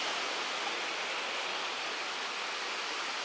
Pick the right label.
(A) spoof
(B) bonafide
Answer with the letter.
B